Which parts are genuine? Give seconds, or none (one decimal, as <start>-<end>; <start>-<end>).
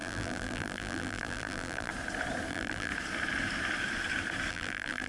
1.9-2.5; 2.9-4.5